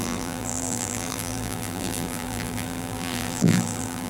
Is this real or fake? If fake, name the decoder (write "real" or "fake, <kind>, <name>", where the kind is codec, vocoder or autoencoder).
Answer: fake, vocoder, BigVGAN v2